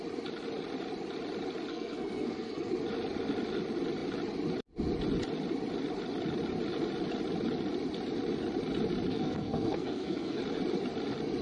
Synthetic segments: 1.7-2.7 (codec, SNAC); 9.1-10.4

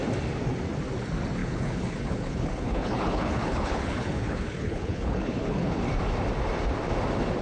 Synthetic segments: 1.4-5.8 (codec, HILCodec)